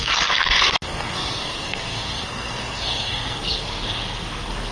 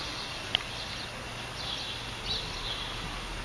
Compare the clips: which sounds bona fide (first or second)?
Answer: second